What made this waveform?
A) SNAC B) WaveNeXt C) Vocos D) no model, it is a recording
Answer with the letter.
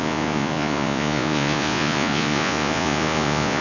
C